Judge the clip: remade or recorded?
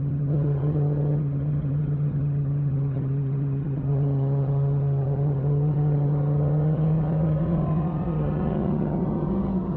remade